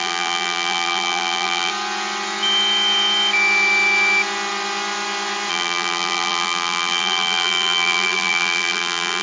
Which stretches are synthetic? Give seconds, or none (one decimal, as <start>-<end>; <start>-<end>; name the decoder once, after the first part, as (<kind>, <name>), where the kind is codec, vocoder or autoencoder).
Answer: 0.0-1.7 (vocoder, BigVGAN v2); 5.5-9.2